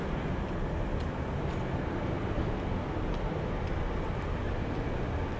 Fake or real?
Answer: real